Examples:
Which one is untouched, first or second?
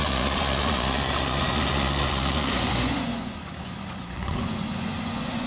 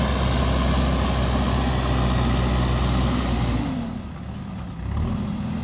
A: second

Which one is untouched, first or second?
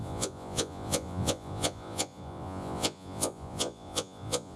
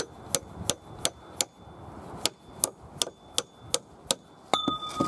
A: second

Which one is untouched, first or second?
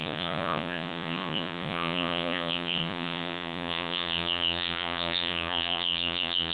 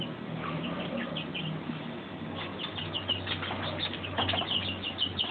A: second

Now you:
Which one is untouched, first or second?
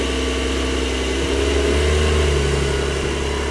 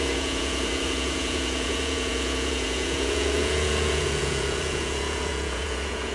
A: first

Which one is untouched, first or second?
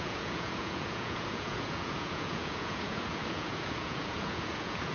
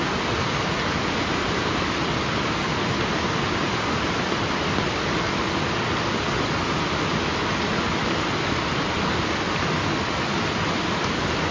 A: second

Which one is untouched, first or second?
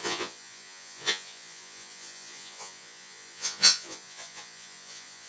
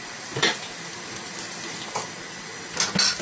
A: second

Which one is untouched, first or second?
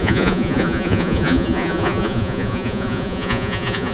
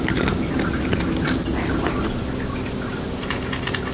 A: second